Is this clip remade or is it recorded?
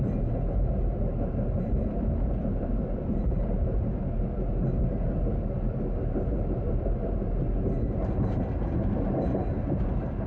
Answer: remade